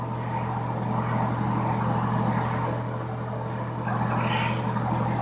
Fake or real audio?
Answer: real